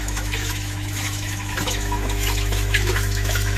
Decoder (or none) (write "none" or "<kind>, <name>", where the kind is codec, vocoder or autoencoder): autoencoder, DAC-VAE